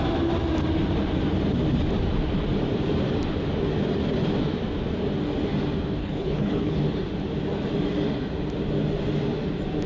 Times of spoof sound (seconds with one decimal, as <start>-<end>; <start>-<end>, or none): 6.0-6.8